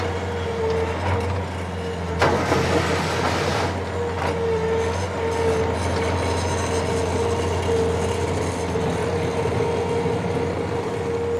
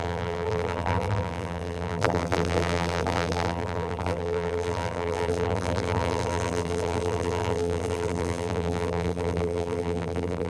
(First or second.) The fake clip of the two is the second